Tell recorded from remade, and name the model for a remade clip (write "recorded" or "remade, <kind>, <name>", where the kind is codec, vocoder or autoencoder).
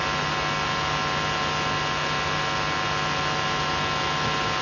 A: recorded